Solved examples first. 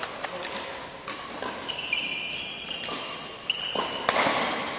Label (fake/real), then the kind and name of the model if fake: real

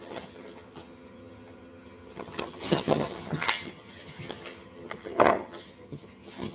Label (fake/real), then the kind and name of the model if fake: fake, vocoder, HiFi-GAN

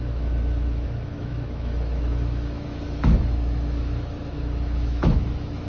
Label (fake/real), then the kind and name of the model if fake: fake, autoencoder, DAC-VAE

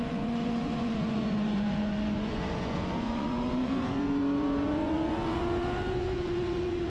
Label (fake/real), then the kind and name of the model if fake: fake, vocoder, Vocos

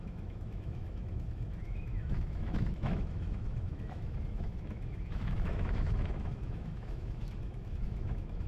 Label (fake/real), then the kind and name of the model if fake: fake, autoencoder, DAC-VAE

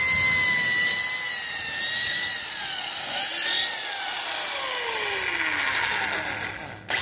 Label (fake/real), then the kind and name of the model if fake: real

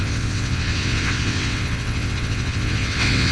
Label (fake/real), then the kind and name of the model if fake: fake, vocoder, WaveNeXt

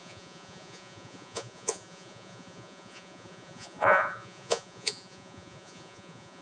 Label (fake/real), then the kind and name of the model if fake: fake, vocoder, Vocos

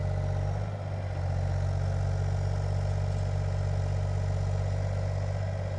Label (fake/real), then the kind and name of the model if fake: real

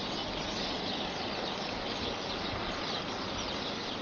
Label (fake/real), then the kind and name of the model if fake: real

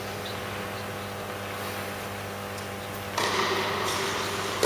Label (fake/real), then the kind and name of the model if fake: real